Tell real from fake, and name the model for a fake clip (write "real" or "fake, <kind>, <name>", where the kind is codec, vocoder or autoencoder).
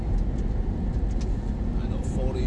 real